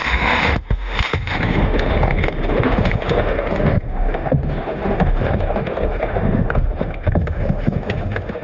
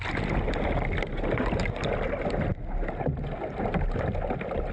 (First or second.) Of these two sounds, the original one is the second